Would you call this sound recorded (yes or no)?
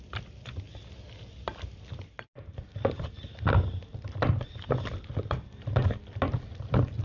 yes